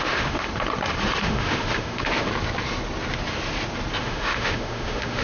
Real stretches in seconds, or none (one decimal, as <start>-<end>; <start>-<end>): 0.5-1.2; 2.3-4.0